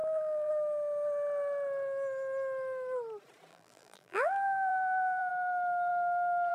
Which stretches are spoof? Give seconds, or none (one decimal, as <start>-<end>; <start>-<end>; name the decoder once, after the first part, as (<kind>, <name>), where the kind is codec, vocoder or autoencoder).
0.0-0.5 (vocoder, BigVGAN v2); 3.5-5.3